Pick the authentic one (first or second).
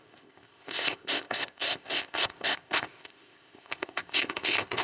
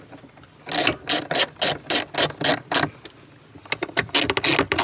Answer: second